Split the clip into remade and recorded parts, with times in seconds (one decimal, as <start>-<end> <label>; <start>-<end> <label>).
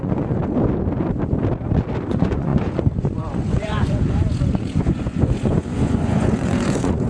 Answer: 0.0-0.4 remade; 0.4-2.1 recorded; 2.1-7.1 remade